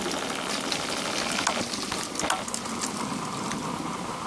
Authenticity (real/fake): real